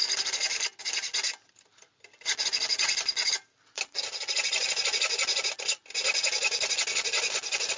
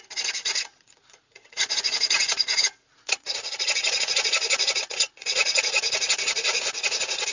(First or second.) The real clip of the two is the first